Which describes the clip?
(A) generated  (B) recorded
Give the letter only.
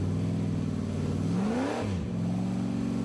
B